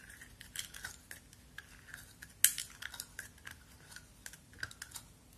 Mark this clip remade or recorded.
recorded